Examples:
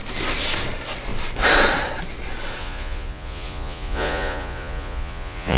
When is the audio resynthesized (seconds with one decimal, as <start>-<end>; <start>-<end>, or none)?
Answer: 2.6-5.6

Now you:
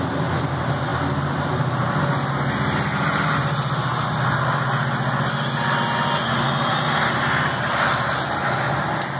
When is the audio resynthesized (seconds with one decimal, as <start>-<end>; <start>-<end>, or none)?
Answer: none

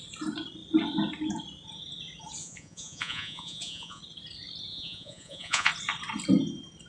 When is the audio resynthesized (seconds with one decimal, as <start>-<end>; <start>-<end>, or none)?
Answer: 2.4-4.0; 4.7-5.7

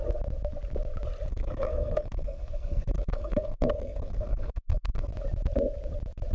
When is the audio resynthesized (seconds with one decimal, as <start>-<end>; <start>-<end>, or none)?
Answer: 1.3-5.1

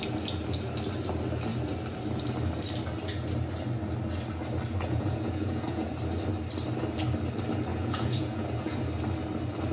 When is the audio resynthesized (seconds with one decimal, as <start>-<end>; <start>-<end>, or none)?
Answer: 4.7-5.9; 7.7-8.8